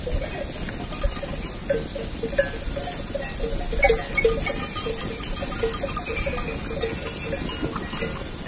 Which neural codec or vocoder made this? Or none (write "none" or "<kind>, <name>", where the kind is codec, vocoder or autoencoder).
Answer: none